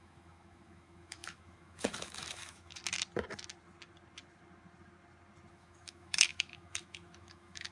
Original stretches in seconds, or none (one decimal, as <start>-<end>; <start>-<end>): 2.8-5.5